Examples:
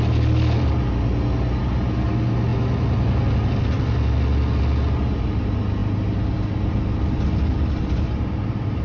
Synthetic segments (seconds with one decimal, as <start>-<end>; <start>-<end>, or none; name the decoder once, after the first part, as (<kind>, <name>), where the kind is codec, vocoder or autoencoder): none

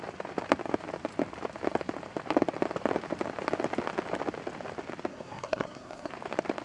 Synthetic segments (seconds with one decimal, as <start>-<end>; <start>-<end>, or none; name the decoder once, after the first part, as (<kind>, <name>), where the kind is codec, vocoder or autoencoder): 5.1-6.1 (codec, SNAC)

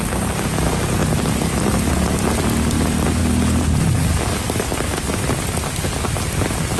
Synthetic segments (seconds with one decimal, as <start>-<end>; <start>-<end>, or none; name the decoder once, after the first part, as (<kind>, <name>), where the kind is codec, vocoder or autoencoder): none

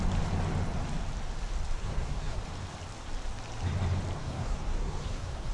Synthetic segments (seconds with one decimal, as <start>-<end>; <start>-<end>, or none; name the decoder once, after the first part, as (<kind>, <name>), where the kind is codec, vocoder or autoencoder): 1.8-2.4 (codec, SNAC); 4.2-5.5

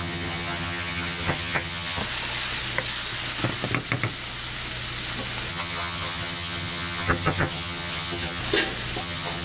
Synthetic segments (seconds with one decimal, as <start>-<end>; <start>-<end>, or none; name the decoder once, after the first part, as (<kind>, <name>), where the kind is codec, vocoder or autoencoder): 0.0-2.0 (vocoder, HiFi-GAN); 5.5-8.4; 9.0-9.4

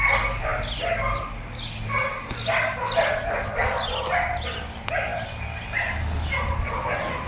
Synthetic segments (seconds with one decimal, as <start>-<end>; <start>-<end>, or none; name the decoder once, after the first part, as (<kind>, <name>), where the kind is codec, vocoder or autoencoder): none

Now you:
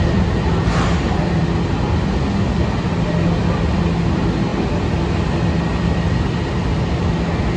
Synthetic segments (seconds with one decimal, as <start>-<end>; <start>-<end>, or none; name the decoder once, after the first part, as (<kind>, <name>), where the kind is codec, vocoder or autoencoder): none

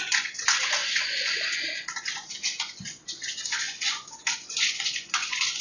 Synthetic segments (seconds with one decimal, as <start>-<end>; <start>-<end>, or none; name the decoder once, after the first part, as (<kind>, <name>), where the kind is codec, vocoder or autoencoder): 0.0-5.6 (vocoder, Vocos)